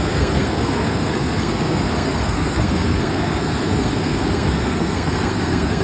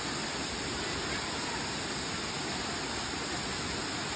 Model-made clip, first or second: first